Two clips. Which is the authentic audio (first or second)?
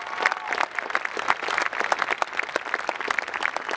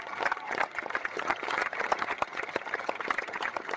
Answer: first